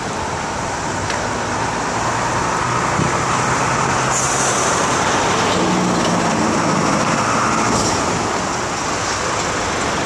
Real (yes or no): yes